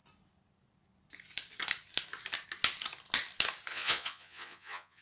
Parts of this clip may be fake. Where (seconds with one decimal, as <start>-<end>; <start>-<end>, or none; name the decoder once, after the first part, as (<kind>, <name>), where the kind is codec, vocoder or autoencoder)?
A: 3.7-5.0 (vocoder, Vocos)